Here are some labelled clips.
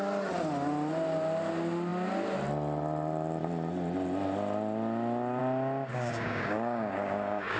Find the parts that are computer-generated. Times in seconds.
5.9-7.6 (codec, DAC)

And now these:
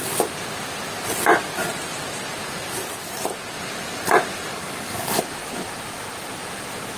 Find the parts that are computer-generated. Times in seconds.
4.5-5.2 (codec, DAC)

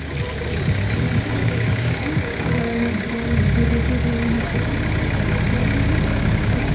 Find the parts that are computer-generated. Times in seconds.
1.4-2.9 (codec, DAC); 5.6-6.7

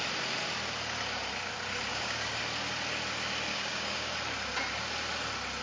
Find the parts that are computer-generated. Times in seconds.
1.9-2.4 (codec, DAC); 3.5-4.1

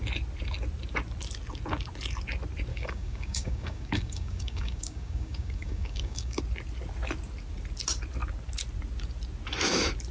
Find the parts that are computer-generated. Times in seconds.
2.7-6.4 (codec, DAC)

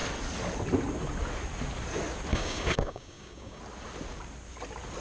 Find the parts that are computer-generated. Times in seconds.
2.3-3.6 (codec, DAC)

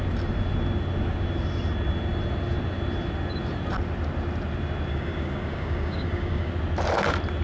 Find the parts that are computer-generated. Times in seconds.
4.9-6.5 (codec, DAC)